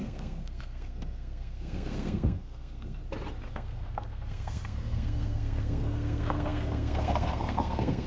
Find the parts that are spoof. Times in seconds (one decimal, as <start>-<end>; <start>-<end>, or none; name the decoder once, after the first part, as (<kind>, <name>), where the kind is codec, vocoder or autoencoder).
0.0-3.0 (codec, SNAC); 3.5-8.1